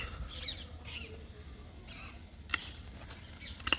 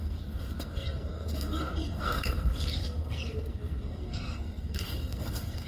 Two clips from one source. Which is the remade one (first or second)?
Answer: second